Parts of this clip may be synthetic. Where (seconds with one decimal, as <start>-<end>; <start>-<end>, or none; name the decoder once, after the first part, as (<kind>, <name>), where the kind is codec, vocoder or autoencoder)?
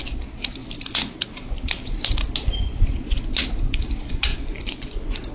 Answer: 4.3-5.3 (vocoder, Vocos)